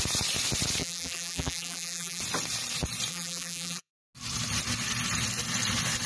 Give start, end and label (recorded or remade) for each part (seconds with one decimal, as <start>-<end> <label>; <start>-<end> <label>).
0.0-0.8 recorded; 0.8-2.2 remade; 2.2-3.1 recorded; 3.1-3.9 remade; 3.9-6.1 recorded